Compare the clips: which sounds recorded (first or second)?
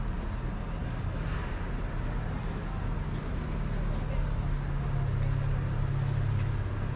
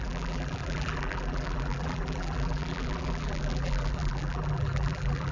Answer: first